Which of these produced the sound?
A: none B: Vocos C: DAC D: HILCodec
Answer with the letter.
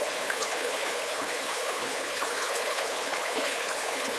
D